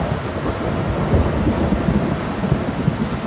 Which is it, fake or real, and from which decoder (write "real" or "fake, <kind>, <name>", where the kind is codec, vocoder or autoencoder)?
real